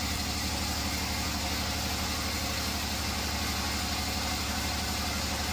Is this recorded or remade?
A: recorded